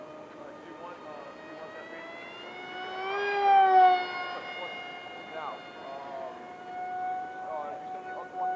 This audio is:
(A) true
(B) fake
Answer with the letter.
A